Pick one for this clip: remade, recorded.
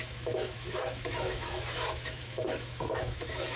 remade